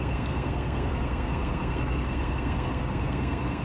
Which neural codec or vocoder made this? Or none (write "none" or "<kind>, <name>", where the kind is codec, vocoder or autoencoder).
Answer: codec, SNAC